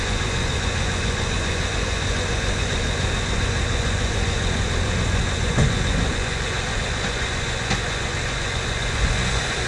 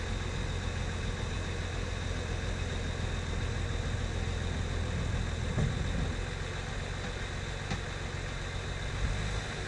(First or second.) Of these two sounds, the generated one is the first